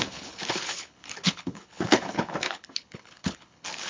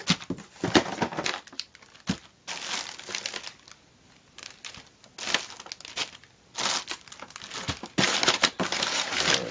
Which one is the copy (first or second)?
first